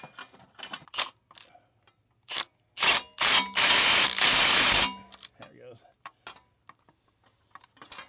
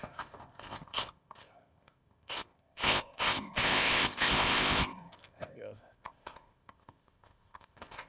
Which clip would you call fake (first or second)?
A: second